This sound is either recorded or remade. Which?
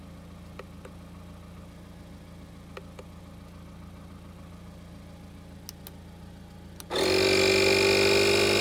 recorded